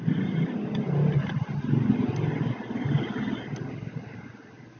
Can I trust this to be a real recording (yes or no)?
yes